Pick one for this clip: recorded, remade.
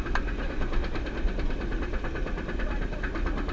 recorded